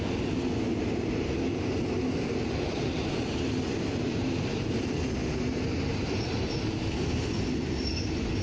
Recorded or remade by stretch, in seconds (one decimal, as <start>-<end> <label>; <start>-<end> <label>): 0.0-8.4 recorded